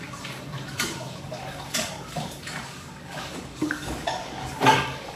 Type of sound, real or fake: fake